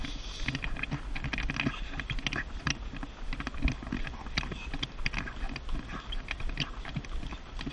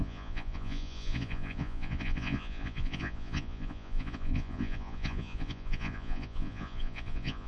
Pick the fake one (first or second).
second